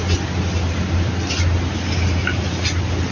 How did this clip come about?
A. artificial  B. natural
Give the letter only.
B